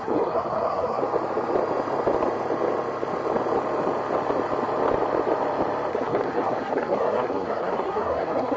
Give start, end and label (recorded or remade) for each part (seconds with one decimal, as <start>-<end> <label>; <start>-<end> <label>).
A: 0.0-1.0 remade; 1.0-5.9 recorded; 5.9-8.6 remade